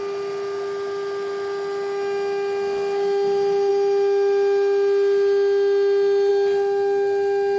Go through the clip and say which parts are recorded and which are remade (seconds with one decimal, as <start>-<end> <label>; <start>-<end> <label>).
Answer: 0.0-7.6 recorded